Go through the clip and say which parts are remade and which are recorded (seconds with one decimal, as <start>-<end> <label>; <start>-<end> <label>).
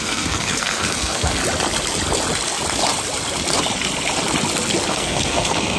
0.0-1.4 remade; 1.4-4.9 recorded; 4.9-5.8 remade